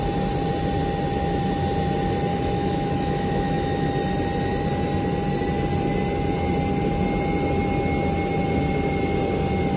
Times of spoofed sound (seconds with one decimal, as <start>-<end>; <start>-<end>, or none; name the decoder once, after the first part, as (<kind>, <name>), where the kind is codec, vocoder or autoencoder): 2.3-3.9 (autoencoder, DAC-VAE)